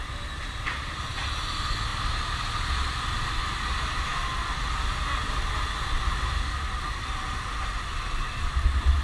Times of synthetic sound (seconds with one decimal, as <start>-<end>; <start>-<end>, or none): none